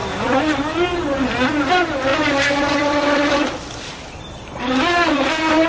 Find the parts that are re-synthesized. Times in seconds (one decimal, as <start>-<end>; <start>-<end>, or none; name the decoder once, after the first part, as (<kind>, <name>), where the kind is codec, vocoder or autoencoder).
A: 2.1-5.7 (vocoder, BigVGAN v2)